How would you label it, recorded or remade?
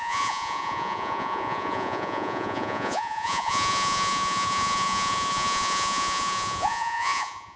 remade